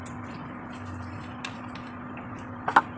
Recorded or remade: recorded